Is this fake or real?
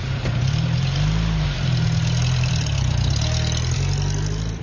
fake